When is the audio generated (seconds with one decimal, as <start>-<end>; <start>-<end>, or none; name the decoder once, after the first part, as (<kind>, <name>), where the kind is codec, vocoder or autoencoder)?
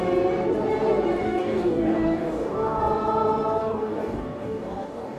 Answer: 1.2-2.8 (codec, DAC); 3.6-5.2